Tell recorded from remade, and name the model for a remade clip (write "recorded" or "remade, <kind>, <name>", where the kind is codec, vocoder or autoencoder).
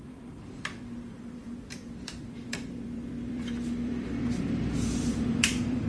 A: remade, vocoder, BigVGAN v2